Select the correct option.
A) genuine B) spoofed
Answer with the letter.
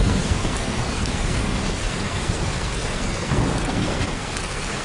B